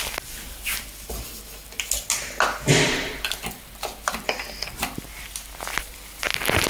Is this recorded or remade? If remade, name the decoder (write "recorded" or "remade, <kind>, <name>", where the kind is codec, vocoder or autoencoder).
recorded